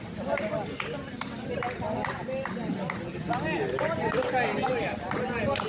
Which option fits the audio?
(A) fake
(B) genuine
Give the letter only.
B